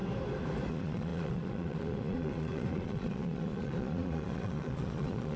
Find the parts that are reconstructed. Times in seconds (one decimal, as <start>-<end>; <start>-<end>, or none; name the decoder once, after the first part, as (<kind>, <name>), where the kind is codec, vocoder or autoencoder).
0.7-5.4 (vocoder, Vocos)